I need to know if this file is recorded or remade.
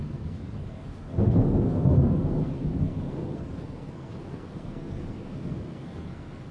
remade